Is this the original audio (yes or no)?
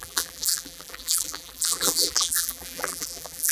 no